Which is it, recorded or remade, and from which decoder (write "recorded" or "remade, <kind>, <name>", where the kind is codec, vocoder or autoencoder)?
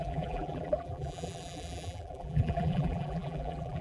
remade, vocoder, BigVGAN v2